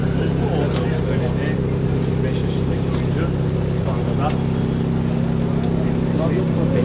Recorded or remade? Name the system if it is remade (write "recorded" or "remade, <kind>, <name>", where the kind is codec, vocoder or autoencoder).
recorded